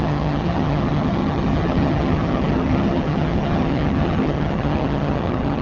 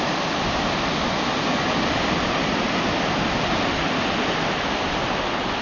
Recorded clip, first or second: second